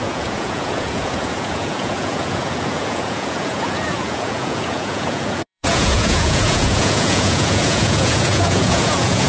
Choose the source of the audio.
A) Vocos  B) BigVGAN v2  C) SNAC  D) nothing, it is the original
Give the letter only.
A